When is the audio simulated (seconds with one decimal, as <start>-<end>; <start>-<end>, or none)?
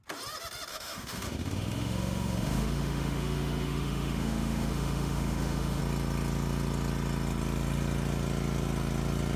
0.7-5.8